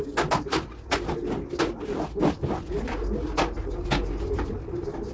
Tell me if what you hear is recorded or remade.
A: recorded